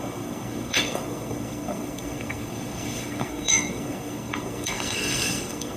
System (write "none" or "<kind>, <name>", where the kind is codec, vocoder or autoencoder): codec, SNAC